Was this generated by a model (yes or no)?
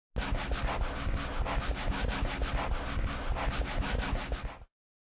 no